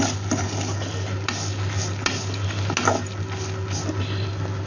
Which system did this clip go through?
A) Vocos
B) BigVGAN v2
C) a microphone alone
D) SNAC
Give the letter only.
C